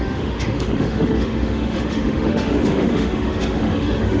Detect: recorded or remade remade